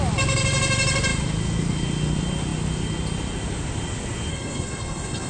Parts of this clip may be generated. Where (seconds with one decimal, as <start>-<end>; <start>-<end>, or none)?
4.3-5.3